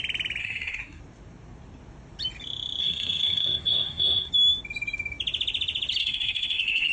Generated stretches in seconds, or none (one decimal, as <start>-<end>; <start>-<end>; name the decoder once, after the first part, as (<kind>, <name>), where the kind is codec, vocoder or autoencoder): 0.4-1.0 (codec, SNAC); 2.8-4.3; 6.0-6.9